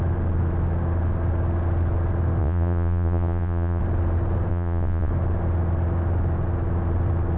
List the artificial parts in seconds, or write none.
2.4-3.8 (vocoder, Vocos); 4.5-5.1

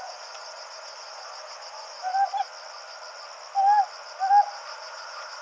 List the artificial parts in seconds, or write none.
0.0-2.1 (vocoder, Vocos); 4.5-5.4

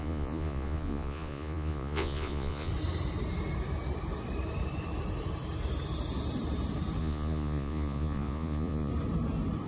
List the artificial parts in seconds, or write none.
0.0-2.7 (vocoder, Vocos); 7.0-8.9

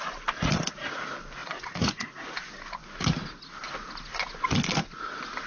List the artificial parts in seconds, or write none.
1.4-1.9 (vocoder, Vocos)